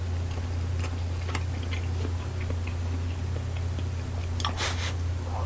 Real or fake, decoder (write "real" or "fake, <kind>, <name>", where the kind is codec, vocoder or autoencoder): real